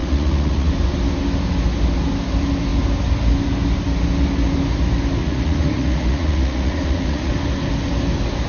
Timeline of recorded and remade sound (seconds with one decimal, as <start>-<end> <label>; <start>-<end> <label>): 0.0-0.7 remade; 0.7-5.2 recorded; 5.2-7.3 remade; 7.3-8.5 recorded